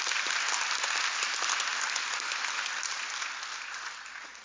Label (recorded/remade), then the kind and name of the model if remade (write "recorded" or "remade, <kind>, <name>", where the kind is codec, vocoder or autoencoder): recorded